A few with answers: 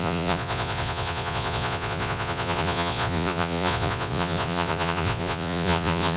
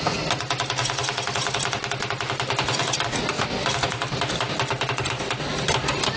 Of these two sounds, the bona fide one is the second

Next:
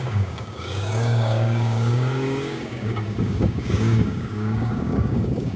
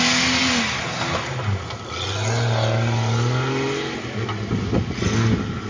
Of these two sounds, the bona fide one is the second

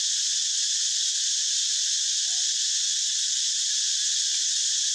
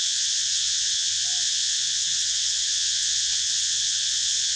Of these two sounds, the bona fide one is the first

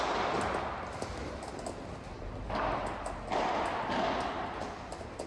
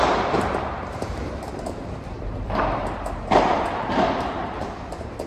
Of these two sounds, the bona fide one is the first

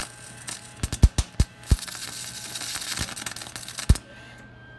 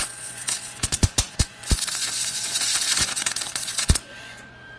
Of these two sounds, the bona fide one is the first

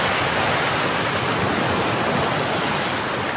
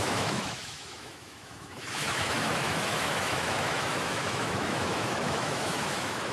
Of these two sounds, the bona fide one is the first